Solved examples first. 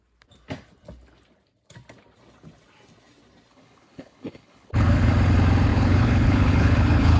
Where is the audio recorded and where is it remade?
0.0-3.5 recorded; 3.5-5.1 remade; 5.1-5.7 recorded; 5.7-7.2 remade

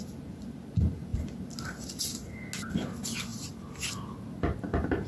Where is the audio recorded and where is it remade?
0.0-5.1 recorded

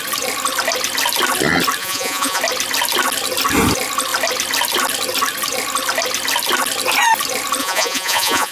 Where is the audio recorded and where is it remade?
0.0-1.8 recorded; 1.8-2.4 remade; 2.4-7.6 recorded; 7.6-8.5 remade

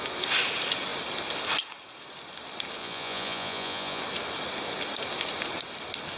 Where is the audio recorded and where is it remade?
0.0-2.8 recorded; 2.8-4.0 remade; 4.0-6.2 recorded